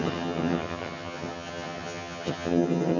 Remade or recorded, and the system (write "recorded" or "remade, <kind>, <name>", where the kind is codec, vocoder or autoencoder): remade, vocoder, HiFi-GAN